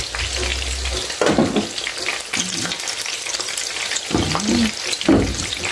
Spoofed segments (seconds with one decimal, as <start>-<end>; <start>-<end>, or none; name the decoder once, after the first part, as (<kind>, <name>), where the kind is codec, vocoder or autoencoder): none